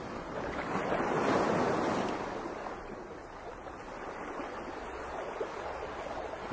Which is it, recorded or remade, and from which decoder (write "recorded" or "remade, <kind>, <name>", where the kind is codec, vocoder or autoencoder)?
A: recorded